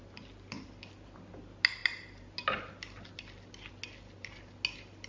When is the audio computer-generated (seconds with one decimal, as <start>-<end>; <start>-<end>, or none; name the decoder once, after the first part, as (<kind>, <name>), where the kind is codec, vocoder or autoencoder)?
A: none